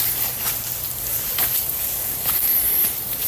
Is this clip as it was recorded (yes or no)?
no